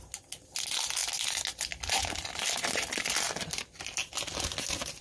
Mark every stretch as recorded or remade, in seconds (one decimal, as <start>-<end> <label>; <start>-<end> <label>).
0.0-5.0 recorded

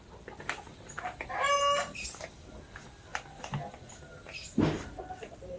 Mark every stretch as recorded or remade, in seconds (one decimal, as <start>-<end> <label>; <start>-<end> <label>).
0.0-5.6 recorded

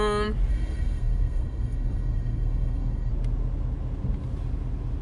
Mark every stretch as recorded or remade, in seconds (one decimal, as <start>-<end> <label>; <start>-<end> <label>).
0.0-0.5 recorded; 0.5-3.1 remade; 3.1-5.0 recorded

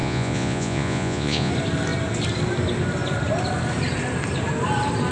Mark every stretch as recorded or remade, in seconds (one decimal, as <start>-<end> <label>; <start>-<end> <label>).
0.0-1.5 remade; 1.5-5.1 recorded

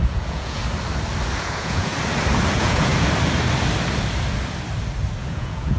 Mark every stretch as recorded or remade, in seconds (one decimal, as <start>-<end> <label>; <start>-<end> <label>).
0.0-0.6 remade; 0.6-1.4 recorded; 1.4-1.9 remade; 1.9-2.5 recorded; 2.5-2.9 remade; 2.9-5.2 recorded; 5.2-5.8 remade

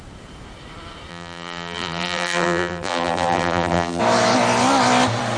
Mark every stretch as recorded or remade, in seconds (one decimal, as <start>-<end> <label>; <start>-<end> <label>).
0.0-1.1 recorded; 1.1-4.0 remade; 4.0-5.4 recorded

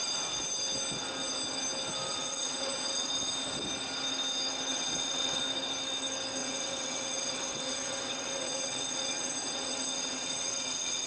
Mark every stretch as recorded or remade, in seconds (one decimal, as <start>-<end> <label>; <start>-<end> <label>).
0.0-2.1 recorded; 2.1-3.1 remade; 3.1-4.7 recorded; 4.7-5.4 remade; 5.4-6.4 recorded; 6.4-11.1 remade